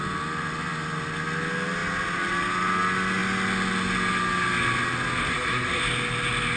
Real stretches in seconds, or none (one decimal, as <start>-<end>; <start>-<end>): 0.0-5.3; 5.8-6.6